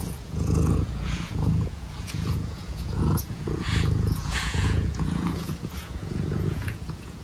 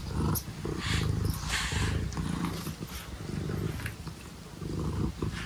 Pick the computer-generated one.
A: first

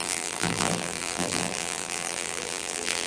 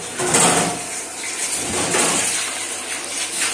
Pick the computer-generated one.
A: first